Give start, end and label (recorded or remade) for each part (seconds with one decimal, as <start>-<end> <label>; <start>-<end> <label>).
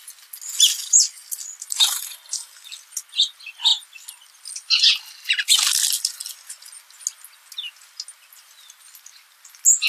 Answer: 0.0-9.9 recorded